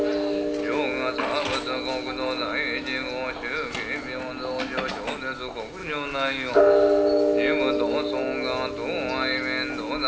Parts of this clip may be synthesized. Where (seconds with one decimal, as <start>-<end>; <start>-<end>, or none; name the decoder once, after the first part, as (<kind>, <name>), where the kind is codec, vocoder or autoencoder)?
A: 5.8-6.6 (autoencoder, DAC-VAE)